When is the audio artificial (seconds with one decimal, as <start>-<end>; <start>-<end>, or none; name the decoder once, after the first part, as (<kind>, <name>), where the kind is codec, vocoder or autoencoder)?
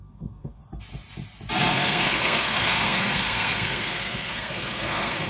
0.0-0.6 (codec, SNAC); 1.7-5.3